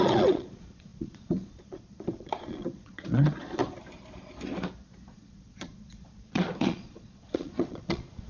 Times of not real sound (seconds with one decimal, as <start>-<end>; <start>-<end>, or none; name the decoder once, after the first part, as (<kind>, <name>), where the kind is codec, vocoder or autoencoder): 0.0-3.6 (vocoder, Vocos); 5.1-8.3